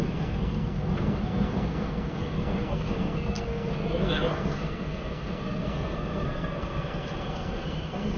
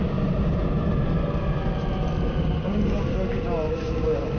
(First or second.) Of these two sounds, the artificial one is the first